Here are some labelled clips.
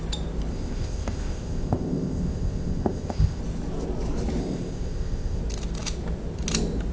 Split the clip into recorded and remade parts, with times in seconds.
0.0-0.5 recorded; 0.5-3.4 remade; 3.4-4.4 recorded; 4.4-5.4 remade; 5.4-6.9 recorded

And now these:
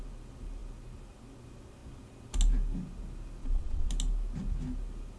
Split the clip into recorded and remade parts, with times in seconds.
0.0-3.4 recorded; 3.4-3.9 remade; 3.9-5.2 recorded